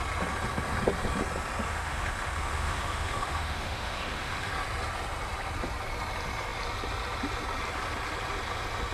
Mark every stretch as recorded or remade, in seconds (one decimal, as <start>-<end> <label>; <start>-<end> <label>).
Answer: 0.0-1.7 recorded; 1.7-4.5 remade; 4.5-8.9 recorded